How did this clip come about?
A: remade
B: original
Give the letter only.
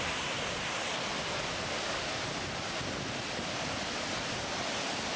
B